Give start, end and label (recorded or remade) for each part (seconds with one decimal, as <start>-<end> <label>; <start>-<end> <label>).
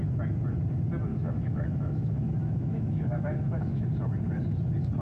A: 0.0-1.1 recorded; 1.1-3.9 remade; 3.9-5.0 recorded